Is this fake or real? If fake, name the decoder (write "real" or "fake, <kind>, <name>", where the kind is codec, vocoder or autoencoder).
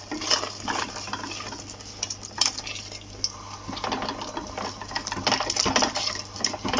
real